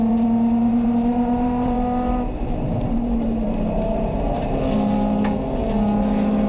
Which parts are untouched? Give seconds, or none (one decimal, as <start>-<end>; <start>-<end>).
0.0-0.7; 4.6-6.5